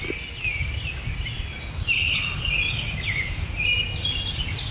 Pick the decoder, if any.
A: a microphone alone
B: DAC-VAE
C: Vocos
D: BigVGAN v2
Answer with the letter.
A